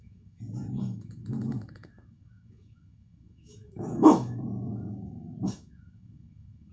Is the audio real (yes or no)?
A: no